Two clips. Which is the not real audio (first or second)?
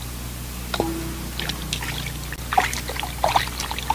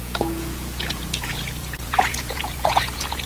second